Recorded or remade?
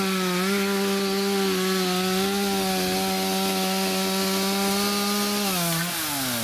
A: recorded